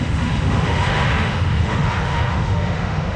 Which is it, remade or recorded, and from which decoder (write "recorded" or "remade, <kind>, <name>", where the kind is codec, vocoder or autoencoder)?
remade, autoencoder, DAC-VAE